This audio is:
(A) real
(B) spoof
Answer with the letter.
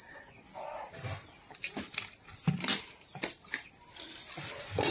A